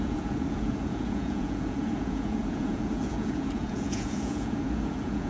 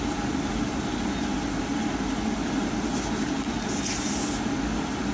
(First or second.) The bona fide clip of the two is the second